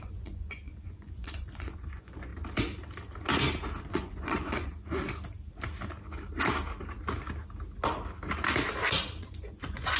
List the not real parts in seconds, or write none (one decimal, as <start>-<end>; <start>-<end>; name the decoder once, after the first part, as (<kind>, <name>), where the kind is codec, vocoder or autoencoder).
0.0-2.3 (vocoder, Vocos); 3.8-4.7; 9.2-10.0